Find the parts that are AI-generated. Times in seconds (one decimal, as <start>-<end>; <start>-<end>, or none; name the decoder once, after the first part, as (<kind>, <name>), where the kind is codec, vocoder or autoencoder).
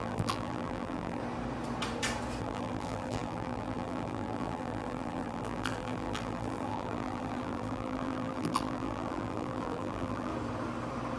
0.0-1.2 (vocoder, BigVGAN v2); 2.4-10.3